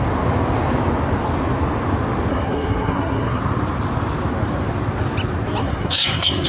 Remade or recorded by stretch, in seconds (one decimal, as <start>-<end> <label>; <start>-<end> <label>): 0.0-2.3 recorded; 2.3-3.4 remade; 3.4-5.6 recorded; 5.6-6.5 remade